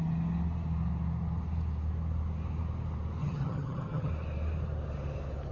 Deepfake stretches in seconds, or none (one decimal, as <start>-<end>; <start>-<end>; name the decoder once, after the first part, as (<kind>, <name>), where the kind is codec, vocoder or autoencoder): 3.2-4.1 (vocoder, HiFi-GAN)